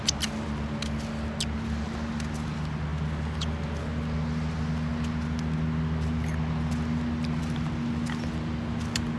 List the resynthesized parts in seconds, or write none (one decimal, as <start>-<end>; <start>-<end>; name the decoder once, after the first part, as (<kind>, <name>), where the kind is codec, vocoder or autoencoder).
none